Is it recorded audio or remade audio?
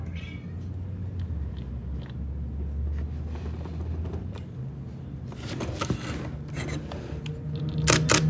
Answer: recorded